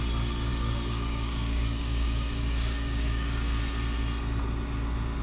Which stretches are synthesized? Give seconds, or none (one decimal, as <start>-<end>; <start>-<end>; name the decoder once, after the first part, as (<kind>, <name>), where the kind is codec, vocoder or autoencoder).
0.5-3.6 (codec, DAC)